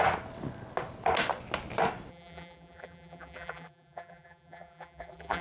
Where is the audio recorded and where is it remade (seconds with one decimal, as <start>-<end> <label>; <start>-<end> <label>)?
0.0-2.1 recorded; 2.1-5.4 remade